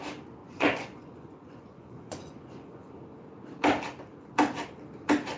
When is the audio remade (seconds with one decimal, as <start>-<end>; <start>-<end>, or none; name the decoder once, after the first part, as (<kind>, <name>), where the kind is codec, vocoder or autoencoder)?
0.4-2.9 (vocoder, Vocos)